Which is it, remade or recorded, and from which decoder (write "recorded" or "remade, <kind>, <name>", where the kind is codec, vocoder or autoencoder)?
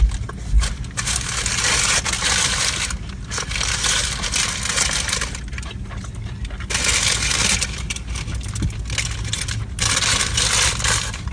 recorded